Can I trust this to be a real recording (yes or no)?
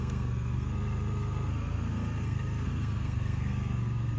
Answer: no